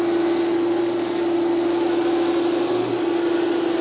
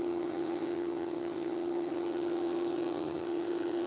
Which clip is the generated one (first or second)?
second